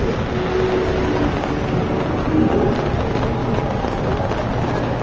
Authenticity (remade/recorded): recorded